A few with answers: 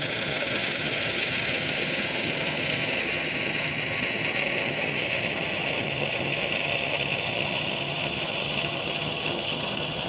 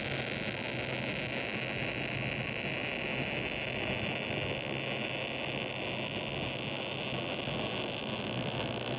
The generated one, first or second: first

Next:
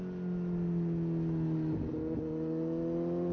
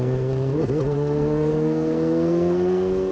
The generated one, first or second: second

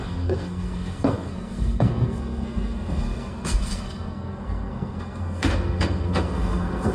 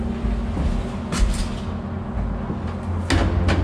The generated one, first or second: first